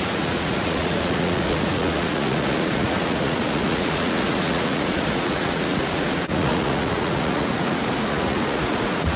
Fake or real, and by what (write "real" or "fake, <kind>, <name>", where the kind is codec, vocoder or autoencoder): fake, vocoder, Vocos